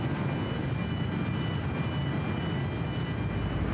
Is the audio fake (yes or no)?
no